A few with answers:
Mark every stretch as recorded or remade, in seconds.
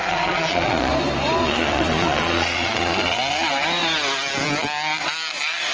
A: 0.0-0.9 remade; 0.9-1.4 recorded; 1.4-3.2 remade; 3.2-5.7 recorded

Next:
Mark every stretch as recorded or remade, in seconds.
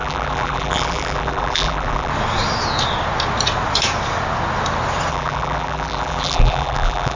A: 0.0-2.1 remade; 2.1-5.1 recorded; 5.1-7.2 remade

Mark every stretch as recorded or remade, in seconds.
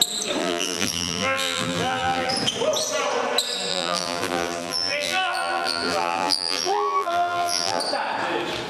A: 0.0-0.4 recorded; 0.4-2.3 remade; 2.3-3.7 recorded; 3.7-7.8 remade; 7.8-8.7 recorded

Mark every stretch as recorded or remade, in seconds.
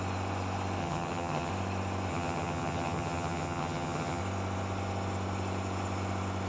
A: 0.0-0.8 recorded; 0.8-1.5 remade; 1.5-2.1 recorded; 2.1-4.2 remade; 4.2-6.5 recorded